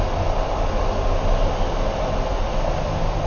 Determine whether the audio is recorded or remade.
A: recorded